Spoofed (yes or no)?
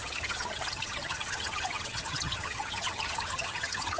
yes